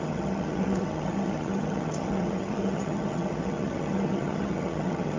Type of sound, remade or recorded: remade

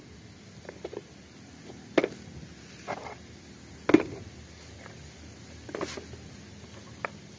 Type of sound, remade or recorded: recorded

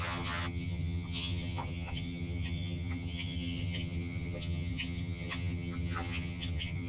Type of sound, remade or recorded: remade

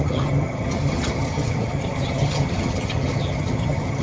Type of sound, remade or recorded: remade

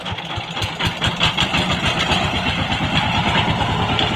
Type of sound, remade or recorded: recorded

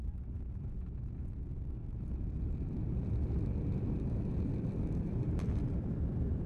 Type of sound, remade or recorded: remade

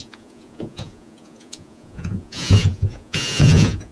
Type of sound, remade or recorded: remade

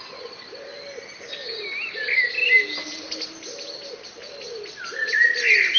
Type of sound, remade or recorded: recorded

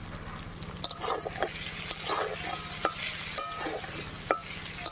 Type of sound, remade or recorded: recorded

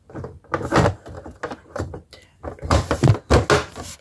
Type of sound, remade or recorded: recorded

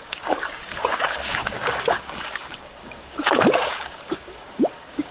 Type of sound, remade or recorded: remade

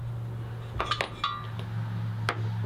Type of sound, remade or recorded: recorded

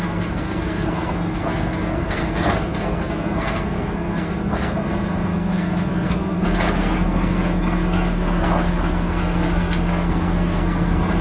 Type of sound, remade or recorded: remade